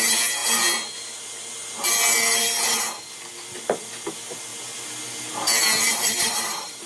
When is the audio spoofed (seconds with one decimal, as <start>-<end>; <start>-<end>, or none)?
5.9-6.9